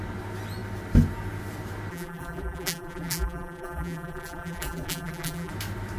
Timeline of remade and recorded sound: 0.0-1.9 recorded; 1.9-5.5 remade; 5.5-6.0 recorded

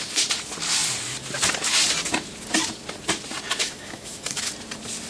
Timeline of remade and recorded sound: 0.0-3.6 recorded; 3.6-4.5 remade; 4.5-5.1 recorded